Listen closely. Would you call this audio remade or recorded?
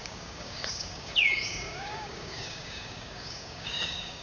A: remade